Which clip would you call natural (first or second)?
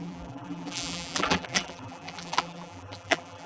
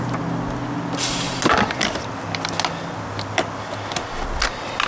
second